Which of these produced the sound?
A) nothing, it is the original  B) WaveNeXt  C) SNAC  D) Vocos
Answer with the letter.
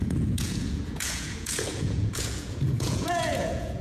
D